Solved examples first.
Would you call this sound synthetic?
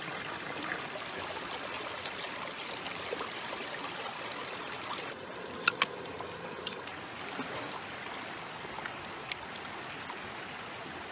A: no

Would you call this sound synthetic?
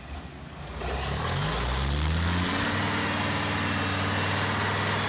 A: no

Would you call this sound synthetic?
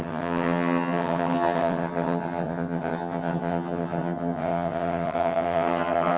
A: yes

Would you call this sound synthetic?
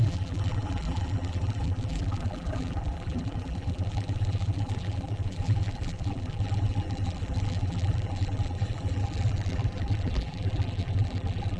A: yes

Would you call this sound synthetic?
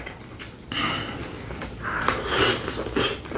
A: no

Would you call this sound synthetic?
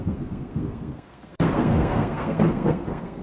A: yes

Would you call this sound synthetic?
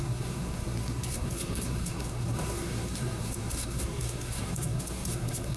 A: yes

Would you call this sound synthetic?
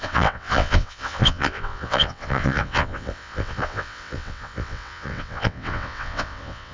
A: yes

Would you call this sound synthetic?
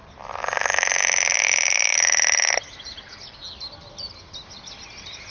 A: no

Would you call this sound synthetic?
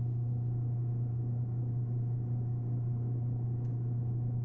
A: no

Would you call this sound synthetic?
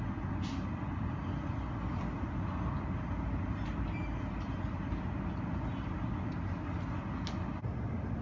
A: no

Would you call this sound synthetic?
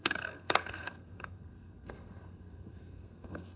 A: yes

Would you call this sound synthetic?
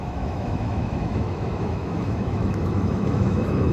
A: yes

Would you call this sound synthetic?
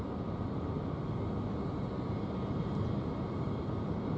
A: no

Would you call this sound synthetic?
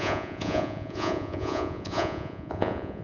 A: yes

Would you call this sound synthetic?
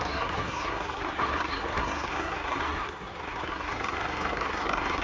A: yes